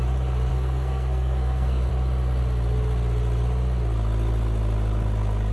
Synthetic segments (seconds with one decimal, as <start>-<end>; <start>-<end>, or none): 0.5-1.9